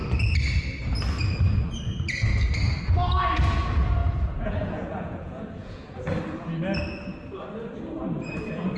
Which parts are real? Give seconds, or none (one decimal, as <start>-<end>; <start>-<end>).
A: 0.0-4.0; 6.0-8.8